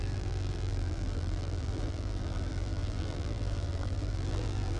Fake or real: fake